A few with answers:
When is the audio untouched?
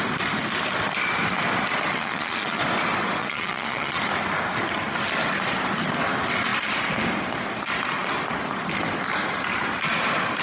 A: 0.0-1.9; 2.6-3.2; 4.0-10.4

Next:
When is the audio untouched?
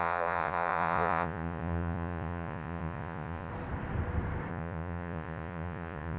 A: 3.5-4.5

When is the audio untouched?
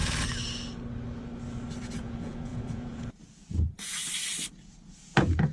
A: 0.0-1.8; 4.0-4.5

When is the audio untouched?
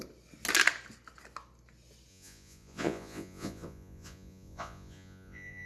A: 0.0-2.1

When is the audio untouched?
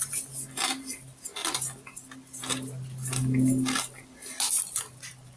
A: 0.0-5.4